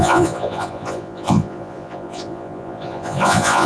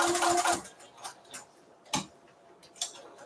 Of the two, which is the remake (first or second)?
first